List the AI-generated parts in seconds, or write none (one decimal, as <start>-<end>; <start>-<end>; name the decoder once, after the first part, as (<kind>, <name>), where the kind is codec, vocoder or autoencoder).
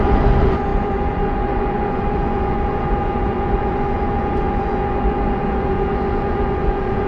0.0-7.1 (vocoder, Vocos)